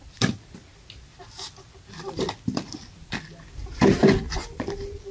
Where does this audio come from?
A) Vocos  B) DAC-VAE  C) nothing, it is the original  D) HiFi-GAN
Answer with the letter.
C